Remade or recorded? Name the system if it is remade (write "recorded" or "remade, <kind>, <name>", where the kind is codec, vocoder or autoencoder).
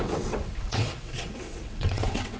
remade, vocoder, WaveNeXt